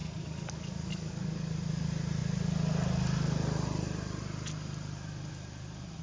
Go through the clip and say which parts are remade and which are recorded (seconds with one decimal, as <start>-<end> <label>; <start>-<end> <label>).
0.0-1.5 remade; 1.5-6.0 recorded